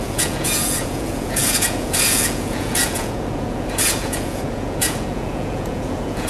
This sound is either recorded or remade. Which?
remade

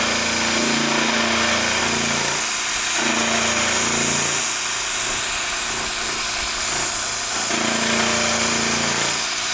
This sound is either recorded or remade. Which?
recorded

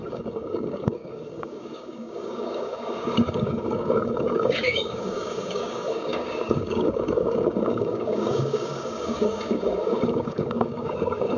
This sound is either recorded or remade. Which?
remade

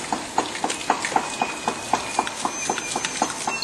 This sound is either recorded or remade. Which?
recorded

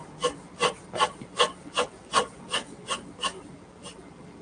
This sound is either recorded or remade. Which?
recorded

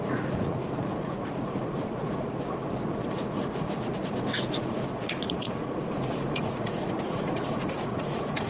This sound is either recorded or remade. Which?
remade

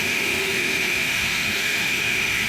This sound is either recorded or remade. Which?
remade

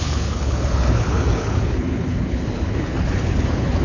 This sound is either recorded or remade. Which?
remade